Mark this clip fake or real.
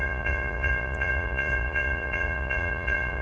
fake